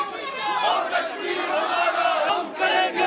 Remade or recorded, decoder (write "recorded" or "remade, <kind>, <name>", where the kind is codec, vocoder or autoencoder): recorded